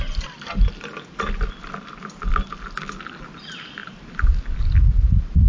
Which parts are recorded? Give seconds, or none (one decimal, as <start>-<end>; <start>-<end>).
0.0-5.5